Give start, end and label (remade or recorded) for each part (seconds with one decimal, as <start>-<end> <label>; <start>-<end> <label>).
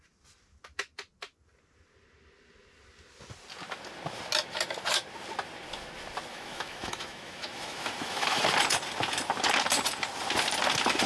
0.0-6.3 recorded; 6.3-8.4 remade; 8.4-11.1 recorded